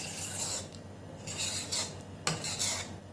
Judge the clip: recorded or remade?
recorded